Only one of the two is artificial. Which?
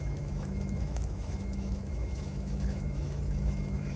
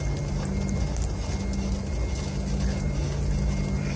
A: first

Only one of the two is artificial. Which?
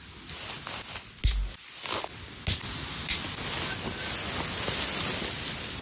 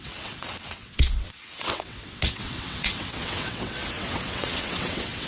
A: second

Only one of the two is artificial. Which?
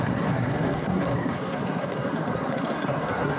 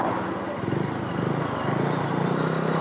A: first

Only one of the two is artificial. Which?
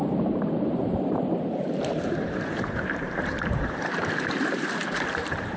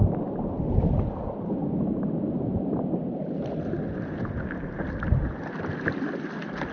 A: first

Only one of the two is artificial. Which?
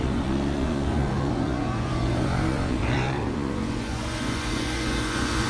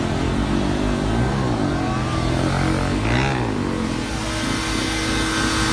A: first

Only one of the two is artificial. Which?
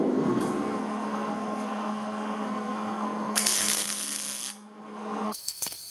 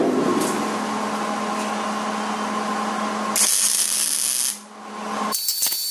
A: first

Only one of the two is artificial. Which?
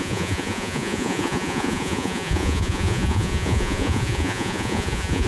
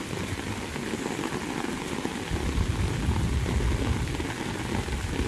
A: first